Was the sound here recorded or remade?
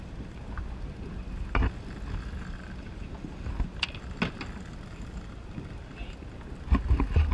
recorded